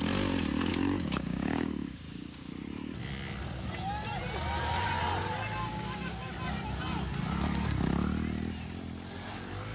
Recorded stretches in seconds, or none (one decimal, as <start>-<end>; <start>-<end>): 0.0-0.7; 2.5-5.7; 6.3-9.7